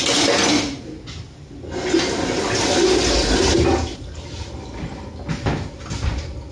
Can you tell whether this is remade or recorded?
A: recorded